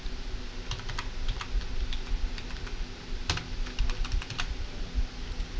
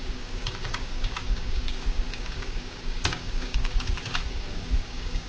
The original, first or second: first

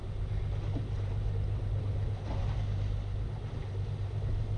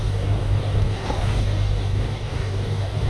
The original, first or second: first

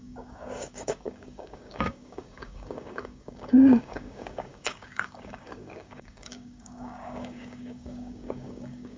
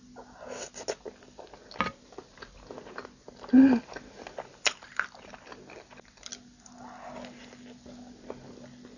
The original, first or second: second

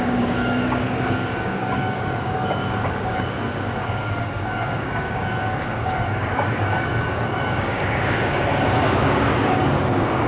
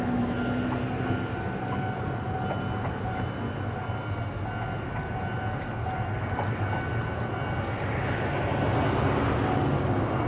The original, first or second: second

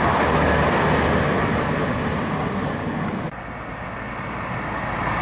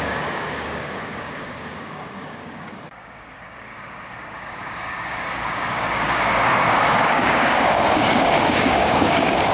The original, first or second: first